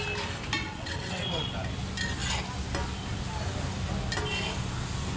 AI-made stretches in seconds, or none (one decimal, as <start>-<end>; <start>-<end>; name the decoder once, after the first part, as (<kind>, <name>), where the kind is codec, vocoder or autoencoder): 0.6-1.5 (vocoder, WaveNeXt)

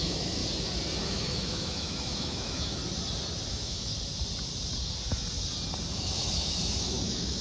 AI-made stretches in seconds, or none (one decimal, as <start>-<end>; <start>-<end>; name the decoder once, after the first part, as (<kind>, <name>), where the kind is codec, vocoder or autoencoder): 0.0-0.4 (autoencoder, DAC-VAE); 1.0-2.8; 3.5-3.9; 5.9-7.4

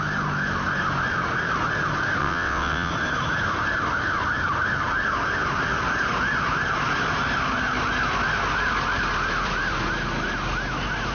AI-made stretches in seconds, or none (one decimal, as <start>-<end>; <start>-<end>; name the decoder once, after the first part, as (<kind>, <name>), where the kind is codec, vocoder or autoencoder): 2.2-2.9 (vocoder, WaveNeXt)

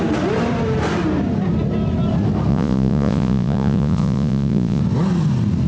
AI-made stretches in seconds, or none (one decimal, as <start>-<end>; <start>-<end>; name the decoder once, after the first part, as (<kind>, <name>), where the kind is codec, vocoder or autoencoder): 2.5-4.8 (vocoder, Vocos)

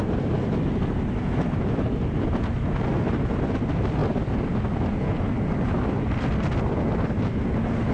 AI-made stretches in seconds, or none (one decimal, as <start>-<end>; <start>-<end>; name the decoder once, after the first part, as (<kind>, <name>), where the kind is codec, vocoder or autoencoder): none

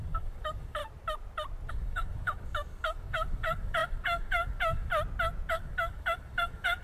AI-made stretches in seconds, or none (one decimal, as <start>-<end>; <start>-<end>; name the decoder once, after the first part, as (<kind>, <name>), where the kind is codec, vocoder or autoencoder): 0.0-0.8 (codec, DAC); 1.7-4.9; 5.5-6.8

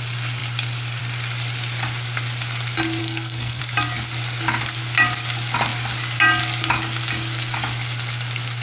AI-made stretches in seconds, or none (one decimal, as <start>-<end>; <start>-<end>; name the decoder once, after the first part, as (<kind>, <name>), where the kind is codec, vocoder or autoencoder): 3.0-3.6 (codec, SNAC)

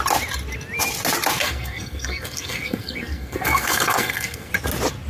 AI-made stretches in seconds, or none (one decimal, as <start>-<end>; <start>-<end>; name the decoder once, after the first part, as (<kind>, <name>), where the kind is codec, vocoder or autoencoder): 1.4-4.5 (codec, SNAC)